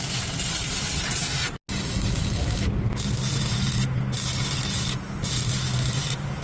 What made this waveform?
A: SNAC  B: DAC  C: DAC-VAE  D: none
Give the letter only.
D